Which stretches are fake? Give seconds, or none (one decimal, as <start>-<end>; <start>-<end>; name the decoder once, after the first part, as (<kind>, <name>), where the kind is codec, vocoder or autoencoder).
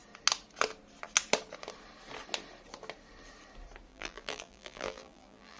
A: 3.9-5.6 (vocoder, BigVGAN v2)